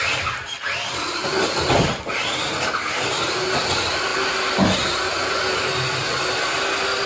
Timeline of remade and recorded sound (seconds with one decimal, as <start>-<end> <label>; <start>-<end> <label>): 0.0-7.1 recorded